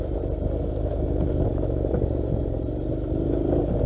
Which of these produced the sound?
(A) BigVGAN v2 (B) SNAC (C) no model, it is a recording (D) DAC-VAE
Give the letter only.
C